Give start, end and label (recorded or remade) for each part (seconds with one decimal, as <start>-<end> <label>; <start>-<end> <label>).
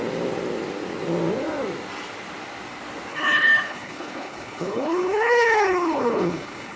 0.0-3.1 recorded; 3.1-6.8 remade